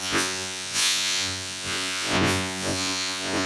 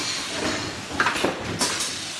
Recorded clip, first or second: second